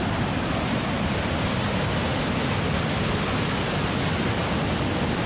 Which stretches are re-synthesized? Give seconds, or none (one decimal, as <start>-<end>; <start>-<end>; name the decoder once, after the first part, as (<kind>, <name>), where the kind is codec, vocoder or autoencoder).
0.0-2.1 (vocoder, BigVGAN v2)